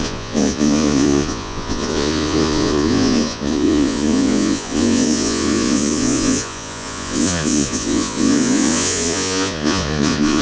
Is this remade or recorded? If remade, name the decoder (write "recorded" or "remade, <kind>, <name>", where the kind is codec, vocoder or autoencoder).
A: remade, vocoder, Vocos